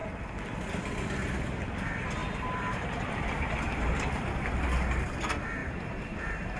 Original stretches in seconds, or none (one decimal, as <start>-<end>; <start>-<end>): 0.0-2.2; 4.2-5.6